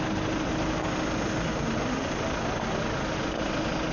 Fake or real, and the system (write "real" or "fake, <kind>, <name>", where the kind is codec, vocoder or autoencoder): real